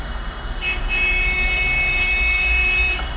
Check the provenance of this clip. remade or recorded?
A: remade